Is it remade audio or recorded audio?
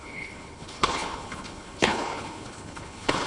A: remade